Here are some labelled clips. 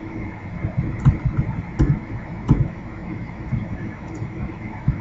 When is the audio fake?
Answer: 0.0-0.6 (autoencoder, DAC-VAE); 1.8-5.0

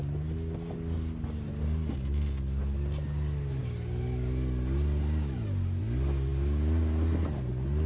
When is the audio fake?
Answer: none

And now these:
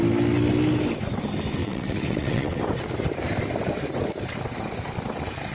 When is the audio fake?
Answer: 1.6-2.6 (vocoder, WaveNeXt)

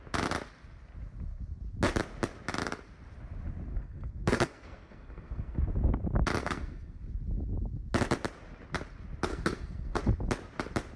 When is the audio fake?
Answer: 3.7-5.6 (codec, SNAC); 6.4-7.0; 9.3-10.0

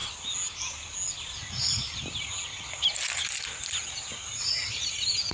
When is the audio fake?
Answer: none

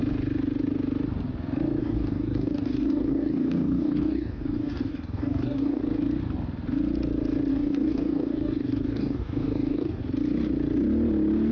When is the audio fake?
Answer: 1.8-5.8 (codec, DAC); 7.5-10.0

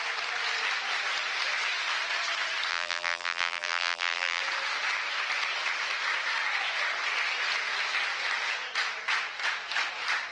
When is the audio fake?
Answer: 2.7-4.4 (vocoder, BigVGAN v2)